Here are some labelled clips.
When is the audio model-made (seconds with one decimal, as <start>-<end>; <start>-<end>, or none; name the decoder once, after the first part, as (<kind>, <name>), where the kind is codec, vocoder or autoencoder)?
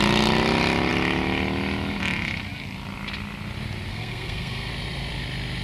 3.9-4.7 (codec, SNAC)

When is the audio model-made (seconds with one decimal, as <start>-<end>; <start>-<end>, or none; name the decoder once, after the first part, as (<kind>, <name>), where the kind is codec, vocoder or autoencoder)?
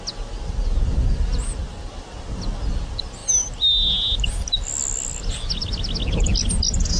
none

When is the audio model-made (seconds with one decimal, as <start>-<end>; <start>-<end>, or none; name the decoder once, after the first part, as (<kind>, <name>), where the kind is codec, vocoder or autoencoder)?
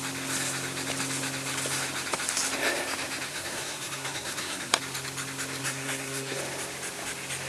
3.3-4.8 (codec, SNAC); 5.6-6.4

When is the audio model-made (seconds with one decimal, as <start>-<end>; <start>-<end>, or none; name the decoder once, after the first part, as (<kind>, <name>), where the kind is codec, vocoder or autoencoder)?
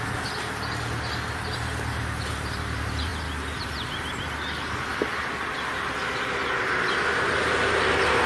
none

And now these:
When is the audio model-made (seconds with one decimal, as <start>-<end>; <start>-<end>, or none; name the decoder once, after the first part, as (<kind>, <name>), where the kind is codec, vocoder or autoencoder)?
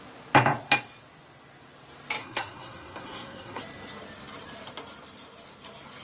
2.2-3.6 (codec, SNAC)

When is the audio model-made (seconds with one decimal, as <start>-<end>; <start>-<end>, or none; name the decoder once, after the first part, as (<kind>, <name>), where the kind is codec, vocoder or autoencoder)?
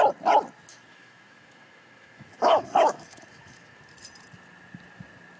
0.7-3.8 (autoencoder, DAC-VAE)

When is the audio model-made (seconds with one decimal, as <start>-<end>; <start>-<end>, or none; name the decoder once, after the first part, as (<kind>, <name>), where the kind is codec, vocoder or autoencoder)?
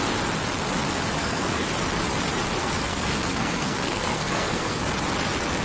1.2-1.7 (codec, SNAC); 2.6-4.9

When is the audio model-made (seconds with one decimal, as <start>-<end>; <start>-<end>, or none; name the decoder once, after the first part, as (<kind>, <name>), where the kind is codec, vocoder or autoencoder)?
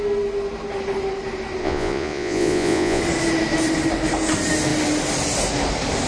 1.6-3.0 (vocoder, Vocos)